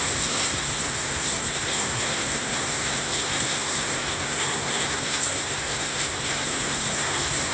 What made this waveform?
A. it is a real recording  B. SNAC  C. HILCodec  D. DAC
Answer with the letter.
B